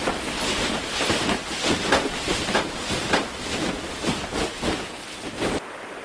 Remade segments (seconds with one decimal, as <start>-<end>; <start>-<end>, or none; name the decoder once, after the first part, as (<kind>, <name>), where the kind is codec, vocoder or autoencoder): none